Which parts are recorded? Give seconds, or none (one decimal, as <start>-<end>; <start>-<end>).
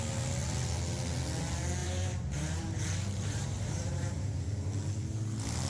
0.0-1.8; 4.4-5.7